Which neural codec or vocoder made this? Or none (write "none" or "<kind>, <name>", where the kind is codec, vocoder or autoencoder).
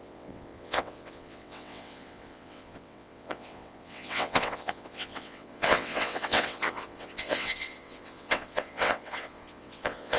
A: vocoder, WaveNeXt